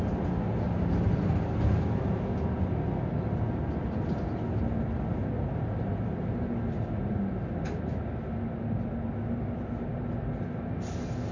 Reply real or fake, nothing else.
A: real